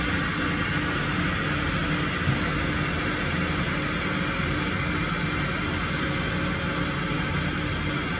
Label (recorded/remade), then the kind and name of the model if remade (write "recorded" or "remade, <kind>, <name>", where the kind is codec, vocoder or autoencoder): recorded